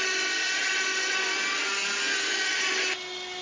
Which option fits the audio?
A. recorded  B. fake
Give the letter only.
A